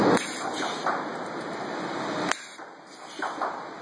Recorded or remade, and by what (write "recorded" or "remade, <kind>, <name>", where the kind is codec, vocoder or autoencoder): recorded